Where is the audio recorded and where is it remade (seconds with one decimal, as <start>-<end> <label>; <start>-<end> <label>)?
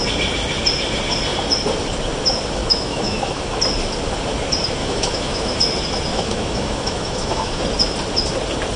0.0-2.6 recorded; 2.6-3.6 remade; 3.6-4.8 recorded; 4.8-5.6 remade; 5.6-6.1 recorded; 6.1-7.6 remade; 7.6-8.8 recorded